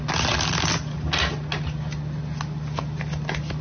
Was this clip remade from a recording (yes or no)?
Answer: no